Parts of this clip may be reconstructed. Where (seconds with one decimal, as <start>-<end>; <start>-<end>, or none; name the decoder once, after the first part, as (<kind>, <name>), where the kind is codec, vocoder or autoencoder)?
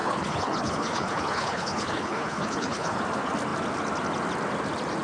0.0-3.0 (codec, HILCodec)